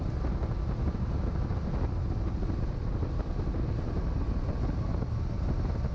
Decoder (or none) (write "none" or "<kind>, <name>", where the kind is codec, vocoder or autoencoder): none